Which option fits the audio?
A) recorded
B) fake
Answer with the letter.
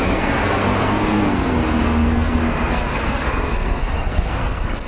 B